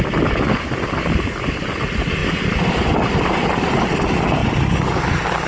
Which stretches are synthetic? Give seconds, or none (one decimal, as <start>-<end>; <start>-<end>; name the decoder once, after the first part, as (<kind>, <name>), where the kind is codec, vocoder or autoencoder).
none